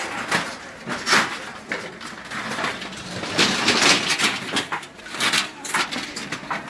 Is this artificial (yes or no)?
no